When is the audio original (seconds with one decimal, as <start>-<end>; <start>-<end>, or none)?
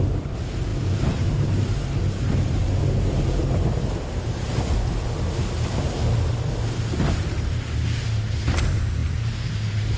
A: 0.0-10.0